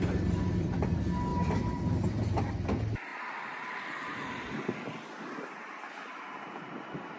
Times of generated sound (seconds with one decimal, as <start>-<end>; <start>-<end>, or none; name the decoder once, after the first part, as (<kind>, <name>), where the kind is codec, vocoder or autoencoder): 3.1-5.4 (vocoder, BigVGAN v2)